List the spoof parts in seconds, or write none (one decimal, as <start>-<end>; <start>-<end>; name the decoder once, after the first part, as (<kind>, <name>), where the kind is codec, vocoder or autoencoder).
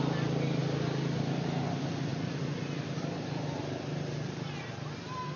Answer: none